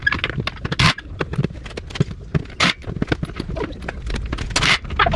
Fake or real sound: real